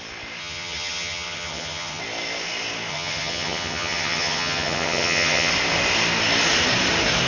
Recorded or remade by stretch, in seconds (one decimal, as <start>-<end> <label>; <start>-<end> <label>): 0.0-0.4 recorded; 0.4-2.0 remade; 2.0-2.9 recorded; 2.9-5.5 remade; 5.5-7.3 recorded